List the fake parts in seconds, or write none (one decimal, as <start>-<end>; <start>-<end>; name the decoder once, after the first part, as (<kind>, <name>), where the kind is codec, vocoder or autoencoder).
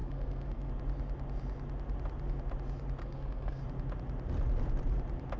0.0-0.7 (codec, SNAC); 3.0-3.6